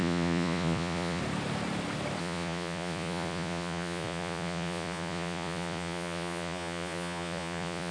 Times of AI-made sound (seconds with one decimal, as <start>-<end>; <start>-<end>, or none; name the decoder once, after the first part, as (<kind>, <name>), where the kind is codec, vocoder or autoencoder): 0.0-1.2 (vocoder, Vocos); 2.2-7.9